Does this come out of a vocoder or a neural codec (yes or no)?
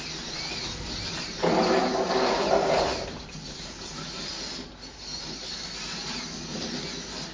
no